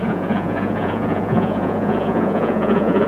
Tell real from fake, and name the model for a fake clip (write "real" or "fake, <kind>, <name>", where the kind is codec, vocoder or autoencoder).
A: fake, vocoder, Vocos